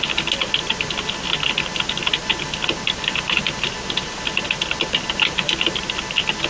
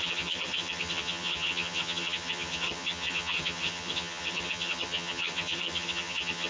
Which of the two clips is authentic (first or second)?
first